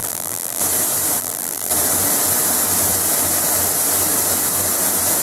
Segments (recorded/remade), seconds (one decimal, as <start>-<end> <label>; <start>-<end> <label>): 0.0-0.6 remade; 0.6-1.2 recorded; 1.2-1.7 remade; 1.7-5.2 recorded